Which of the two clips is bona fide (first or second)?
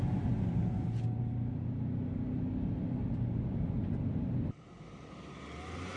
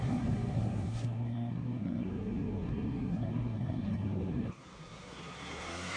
first